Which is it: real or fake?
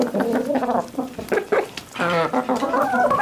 fake